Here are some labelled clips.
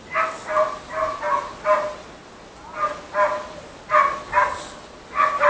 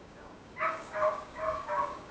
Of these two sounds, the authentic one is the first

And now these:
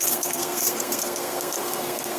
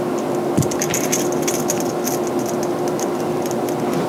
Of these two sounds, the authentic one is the second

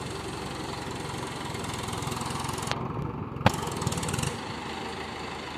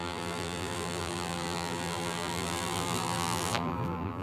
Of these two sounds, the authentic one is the first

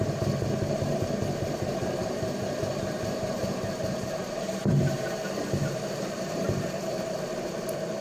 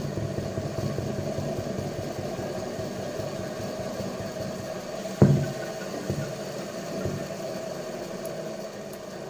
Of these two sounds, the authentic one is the second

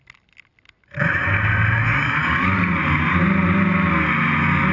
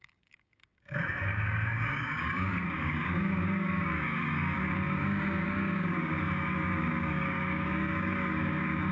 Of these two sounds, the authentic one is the first